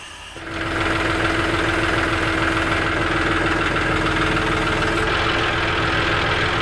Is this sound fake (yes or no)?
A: no